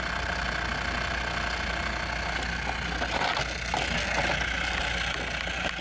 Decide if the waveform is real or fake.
real